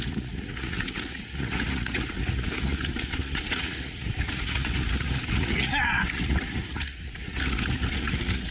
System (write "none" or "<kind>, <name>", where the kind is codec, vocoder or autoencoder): vocoder, Vocos